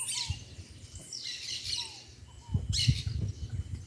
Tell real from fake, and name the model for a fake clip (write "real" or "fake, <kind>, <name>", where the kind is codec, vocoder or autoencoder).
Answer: real